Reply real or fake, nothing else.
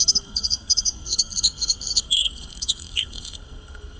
fake